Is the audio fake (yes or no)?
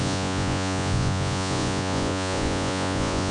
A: yes